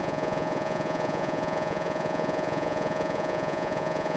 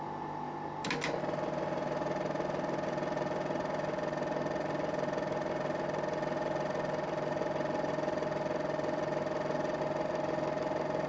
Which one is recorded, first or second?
second